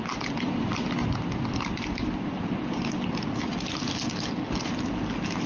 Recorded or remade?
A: recorded